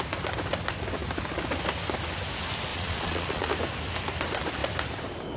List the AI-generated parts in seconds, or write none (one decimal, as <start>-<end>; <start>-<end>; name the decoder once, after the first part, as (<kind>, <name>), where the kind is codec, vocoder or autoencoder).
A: 2.7-3.5 (vocoder, Vocos)